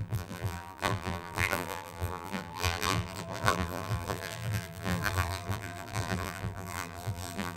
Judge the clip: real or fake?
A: fake